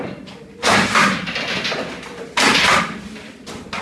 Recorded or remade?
recorded